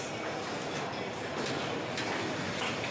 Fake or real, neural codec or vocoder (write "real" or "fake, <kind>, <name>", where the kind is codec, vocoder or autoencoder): real